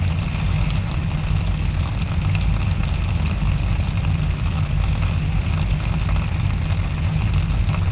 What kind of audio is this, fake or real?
real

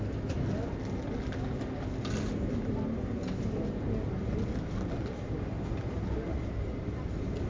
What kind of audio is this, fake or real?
real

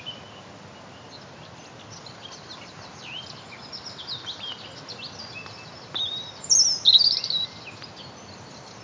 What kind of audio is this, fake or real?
real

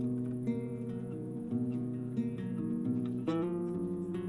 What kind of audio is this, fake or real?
fake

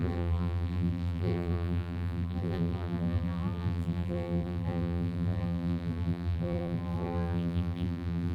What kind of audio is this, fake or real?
fake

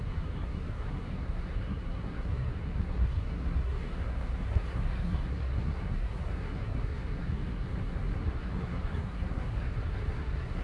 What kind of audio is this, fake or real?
fake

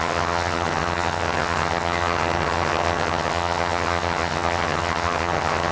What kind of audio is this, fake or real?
fake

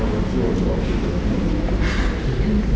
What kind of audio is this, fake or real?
real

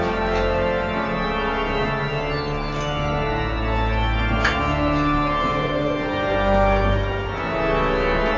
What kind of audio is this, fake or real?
real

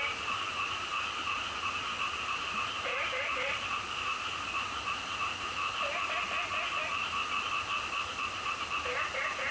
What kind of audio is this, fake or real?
real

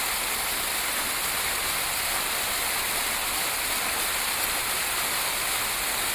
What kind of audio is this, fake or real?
real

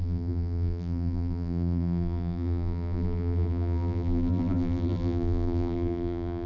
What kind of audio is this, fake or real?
fake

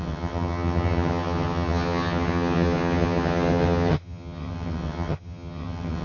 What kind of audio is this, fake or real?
fake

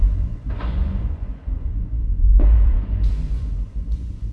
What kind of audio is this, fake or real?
fake